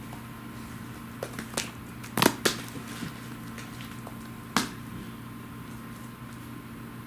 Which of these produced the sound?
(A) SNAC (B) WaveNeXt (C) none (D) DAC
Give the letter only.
C